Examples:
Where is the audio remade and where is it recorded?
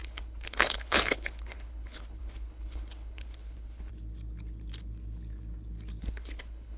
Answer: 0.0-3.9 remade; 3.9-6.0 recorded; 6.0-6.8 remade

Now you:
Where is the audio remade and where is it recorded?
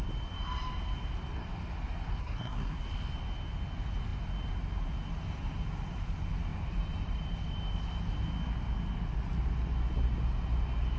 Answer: 0.0-2.2 recorded; 2.2-2.8 remade; 2.8-11.0 recorded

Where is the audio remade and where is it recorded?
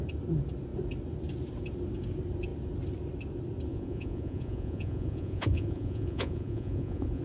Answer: 0.0-3.7 recorded; 3.7-7.2 remade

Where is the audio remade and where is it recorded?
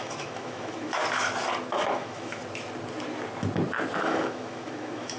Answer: 0.0-1.0 remade; 1.0-1.7 recorded; 1.7-2.4 remade; 2.4-4.0 recorded; 4.0-5.2 remade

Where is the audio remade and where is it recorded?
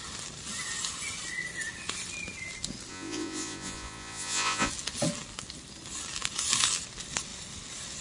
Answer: 0.0-2.9 recorded; 2.9-4.7 remade; 4.7-8.0 recorded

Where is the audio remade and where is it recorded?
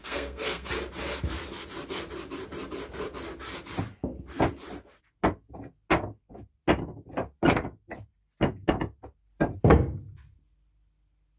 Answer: 0.0-0.7 remade; 0.7-11.4 recorded